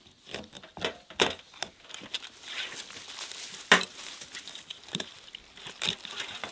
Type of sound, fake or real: real